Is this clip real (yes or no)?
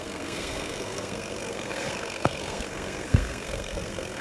no